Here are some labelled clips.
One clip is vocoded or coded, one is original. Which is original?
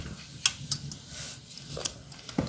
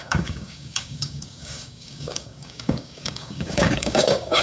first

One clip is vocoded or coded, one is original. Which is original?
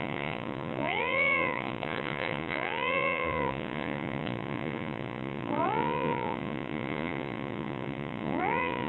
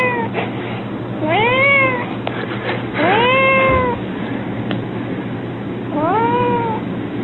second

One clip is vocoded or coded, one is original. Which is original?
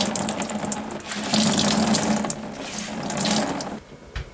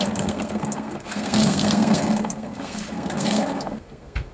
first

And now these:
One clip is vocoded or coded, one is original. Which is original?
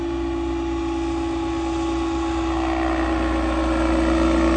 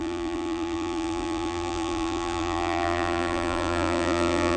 first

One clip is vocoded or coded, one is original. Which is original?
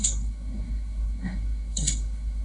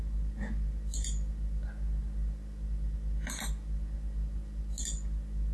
second